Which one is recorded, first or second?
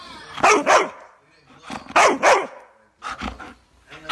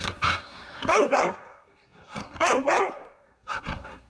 first